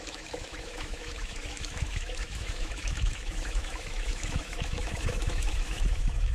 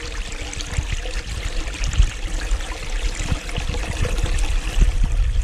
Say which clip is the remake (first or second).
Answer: first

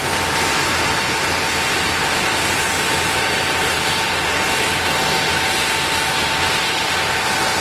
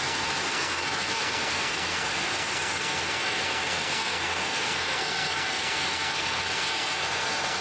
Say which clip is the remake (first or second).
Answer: second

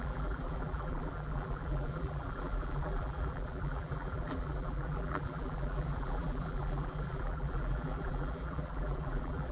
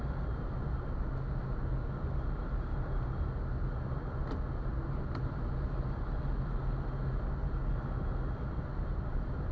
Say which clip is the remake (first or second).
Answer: first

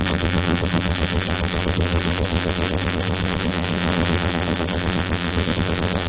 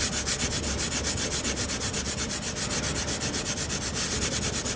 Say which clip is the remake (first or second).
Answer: first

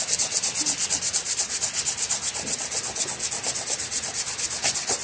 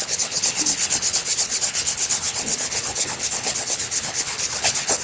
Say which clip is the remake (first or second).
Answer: second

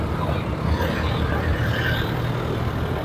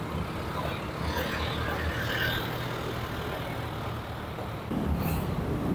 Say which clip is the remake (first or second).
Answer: first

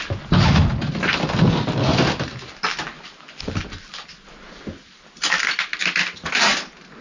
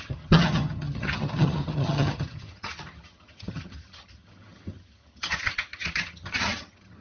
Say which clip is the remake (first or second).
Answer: second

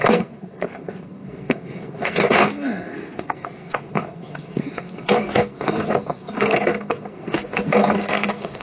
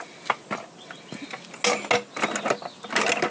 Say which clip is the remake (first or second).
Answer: first